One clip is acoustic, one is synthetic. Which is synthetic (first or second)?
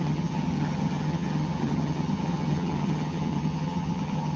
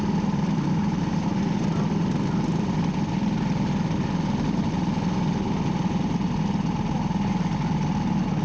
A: first